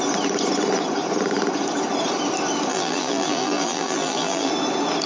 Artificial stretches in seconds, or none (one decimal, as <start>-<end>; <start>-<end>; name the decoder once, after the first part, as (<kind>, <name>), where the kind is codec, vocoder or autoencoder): 2.7-4.5 (vocoder, BigVGAN v2)